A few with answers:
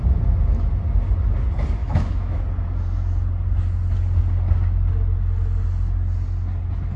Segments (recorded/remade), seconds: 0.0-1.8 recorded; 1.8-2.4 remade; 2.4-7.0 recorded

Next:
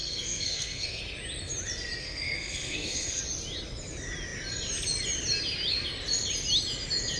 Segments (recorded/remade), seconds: 0.0-1.0 remade; 1.0-2.0 recorded; 2.0-3.2 remade; 3.2-7.2 recorded

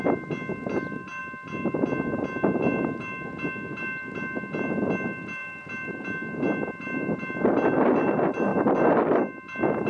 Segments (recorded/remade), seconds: 0.0-8.5 recorded; 8.5-9.2 remade; 9.2-9.9 recorded

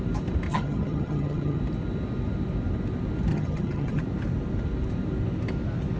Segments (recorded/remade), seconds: 0.0-0.5 recorded; 0.5-1.6 remade; 1.6-3.3 recorded; 3.3-4.0 remade; 4.0-6.0 recorded

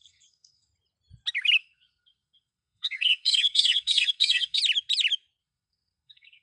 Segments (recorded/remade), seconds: 0.0-0.7 remade; 0.7-1.6 recorded; 1.6-4.6 remade; 4.6-5.4 recorded; 5.4-6.4 remade

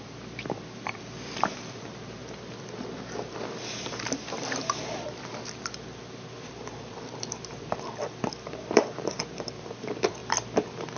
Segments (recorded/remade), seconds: 0.0-10.2 remade; 10.2-11.0 recorded

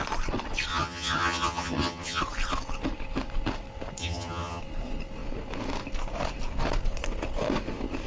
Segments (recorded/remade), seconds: 0.0-0.7 recorded; 0.7-2.2 remade; 2.2-4.0 recorded; 4.0-4.6 remade; 4.6-8.1 recorded

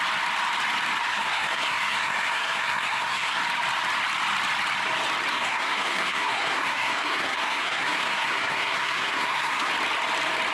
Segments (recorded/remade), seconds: 0.0-1.1 recorded; 1.1-3.4 remade; 3.4-5.3 recorded; 5.3-9.7 remade; 9.7-10.5 recorded